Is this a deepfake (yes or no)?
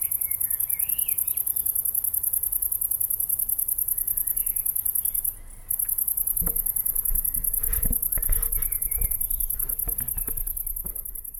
no